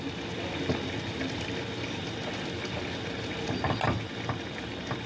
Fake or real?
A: real